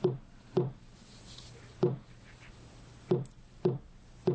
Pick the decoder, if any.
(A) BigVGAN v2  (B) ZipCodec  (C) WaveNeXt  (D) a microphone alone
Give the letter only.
D